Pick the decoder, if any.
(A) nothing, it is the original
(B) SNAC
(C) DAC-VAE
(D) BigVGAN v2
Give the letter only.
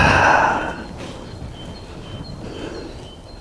A